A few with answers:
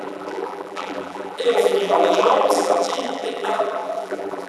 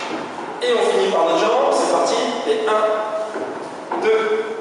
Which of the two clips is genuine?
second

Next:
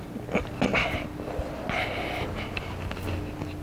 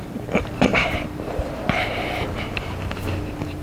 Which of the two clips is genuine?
first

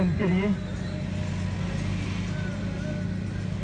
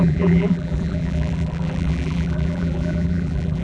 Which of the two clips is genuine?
first